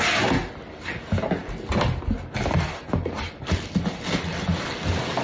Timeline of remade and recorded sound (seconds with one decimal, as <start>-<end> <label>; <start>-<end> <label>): 0.0-5.2 recorded